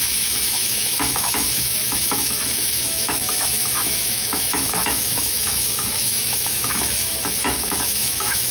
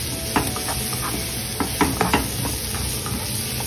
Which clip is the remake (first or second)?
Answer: first